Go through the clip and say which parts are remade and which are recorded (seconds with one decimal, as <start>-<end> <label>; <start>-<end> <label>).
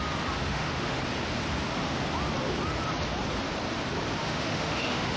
0.0-0.4 recorded; 0.4-1.0 remade; 1.0-4.2 recorded; 4.2-5.2 remade